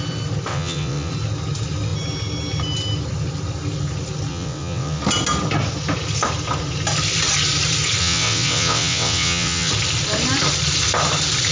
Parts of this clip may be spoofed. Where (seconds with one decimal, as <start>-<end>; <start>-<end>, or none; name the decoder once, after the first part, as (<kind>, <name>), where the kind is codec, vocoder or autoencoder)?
0.5-1.1 (vocoder, WaveNeXt); 4.3-5.0; 8.0-9.7